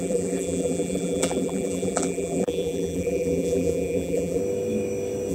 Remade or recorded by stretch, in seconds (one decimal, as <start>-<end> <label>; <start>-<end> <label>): 0.0-4.4 remade; 4.4-5.3 recorded